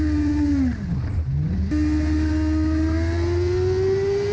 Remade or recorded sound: recorded